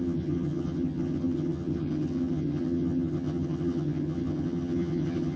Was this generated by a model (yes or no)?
yes